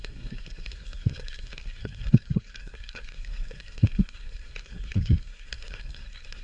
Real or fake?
fake